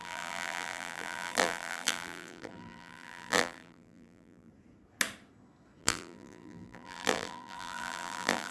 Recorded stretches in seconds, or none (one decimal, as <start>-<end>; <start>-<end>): 4.5-5.8